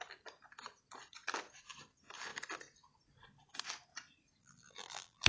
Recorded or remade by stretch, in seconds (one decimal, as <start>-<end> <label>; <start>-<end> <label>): 0.0-4.4 recorded; 4.4-5.3 remade